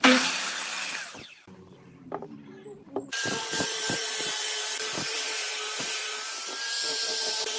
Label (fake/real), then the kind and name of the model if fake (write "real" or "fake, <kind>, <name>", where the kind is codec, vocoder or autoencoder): fake, vocoder, BigVGAN v2